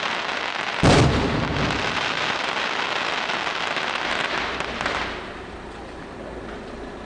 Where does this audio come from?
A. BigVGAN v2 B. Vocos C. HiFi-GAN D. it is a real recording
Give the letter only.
D